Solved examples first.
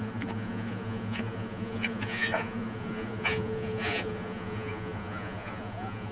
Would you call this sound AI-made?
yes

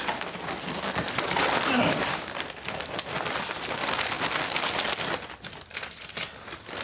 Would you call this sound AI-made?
no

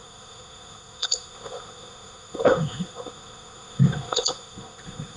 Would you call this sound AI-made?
yes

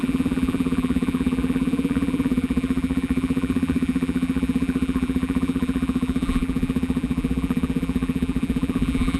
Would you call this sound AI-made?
yes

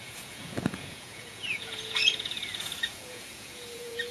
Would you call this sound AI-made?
yes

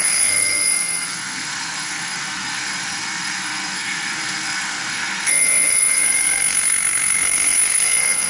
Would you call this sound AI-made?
yes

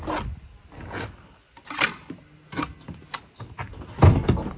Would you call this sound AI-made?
no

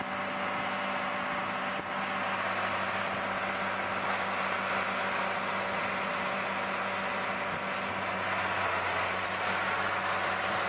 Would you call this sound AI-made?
no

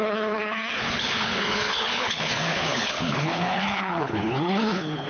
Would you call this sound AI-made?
yes